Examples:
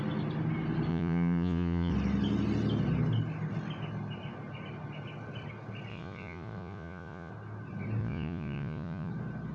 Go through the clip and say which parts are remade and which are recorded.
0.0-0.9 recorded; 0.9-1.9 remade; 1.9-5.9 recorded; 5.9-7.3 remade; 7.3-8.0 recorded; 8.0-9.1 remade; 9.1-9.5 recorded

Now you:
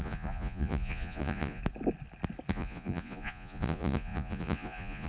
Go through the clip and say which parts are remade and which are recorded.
0.0-1.6 remade; 1.6-2.5 recorded; 2.5-5.1 remade

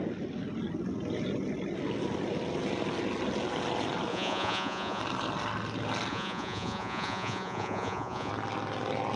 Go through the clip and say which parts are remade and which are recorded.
0.0-4.1 recorded; 4.1-5.0 remade; 5.0-6.1 recorded; 6.1-8.3 remade; 8.3-9.2 recorded

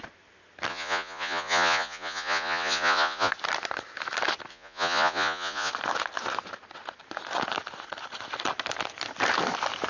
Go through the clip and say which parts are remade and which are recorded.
0.0-0.7 recorded; 0.7-3.3 remade; 3.3-4.5 recorded; 4.5-5.7 remade; 5.7-9.9 recorded